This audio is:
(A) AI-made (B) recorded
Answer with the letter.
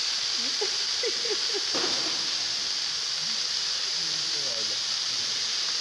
B